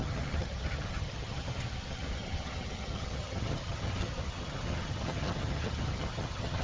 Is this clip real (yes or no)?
no